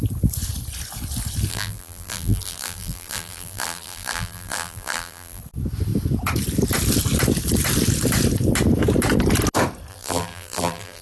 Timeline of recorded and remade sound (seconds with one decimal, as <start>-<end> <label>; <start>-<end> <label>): 0.0-1.5 recorded; 1.5-5.4 remade; 5.4-9.9 recorded; 9.9-11.0 remade